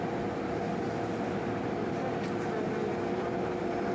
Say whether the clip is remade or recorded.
remade